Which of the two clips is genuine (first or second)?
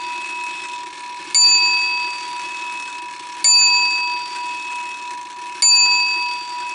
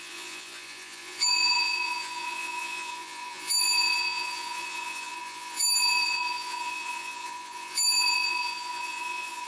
first